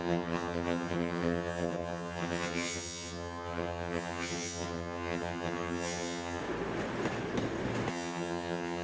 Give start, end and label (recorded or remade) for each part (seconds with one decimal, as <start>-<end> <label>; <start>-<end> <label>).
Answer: 0.0-6.4 remade; 6.4-7.9 recorded; 7.9-8.8 remade